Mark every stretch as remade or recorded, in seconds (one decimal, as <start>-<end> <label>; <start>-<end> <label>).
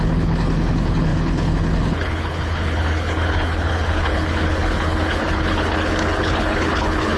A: 0.0-7.2 remade